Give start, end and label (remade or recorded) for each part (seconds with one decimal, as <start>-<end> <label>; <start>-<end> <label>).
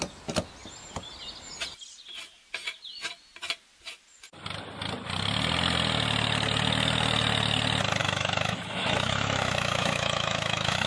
0.0-8.0 recorded; 8.0-10.9 remade